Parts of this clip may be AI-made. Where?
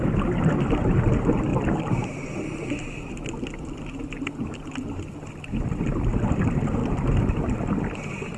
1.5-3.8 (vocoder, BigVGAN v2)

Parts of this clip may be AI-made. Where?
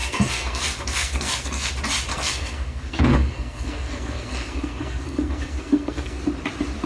0.0-1.7 (codec, SNAC); 2.1-6.2